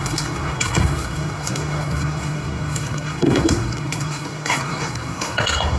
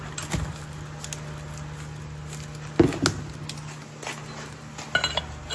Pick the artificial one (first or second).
first